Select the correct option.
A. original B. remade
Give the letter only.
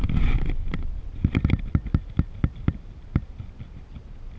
B